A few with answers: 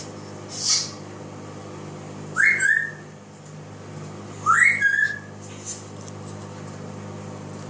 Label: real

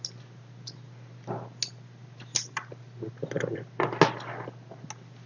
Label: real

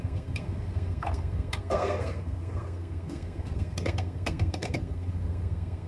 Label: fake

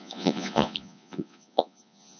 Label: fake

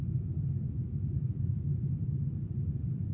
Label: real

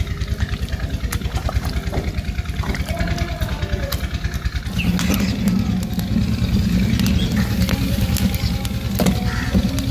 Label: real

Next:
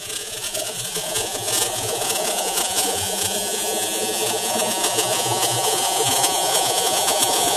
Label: fake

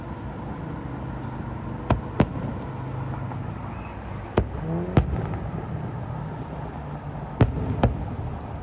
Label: real